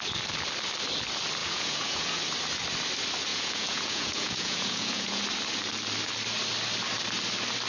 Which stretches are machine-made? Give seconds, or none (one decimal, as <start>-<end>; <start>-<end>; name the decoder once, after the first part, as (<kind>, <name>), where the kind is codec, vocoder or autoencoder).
1.4-2.2 (vocoder, Vocos); 3.3-5.2